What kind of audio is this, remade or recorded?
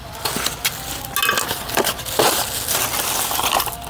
recorded